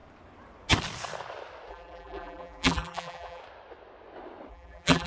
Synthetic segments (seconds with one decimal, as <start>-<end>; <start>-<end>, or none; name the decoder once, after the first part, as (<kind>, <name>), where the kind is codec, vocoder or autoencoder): 1.7-3.4 (vocoder, BigVGAN v2); 4.5-5.1